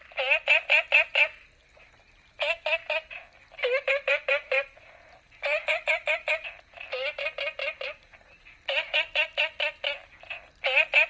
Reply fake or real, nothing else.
real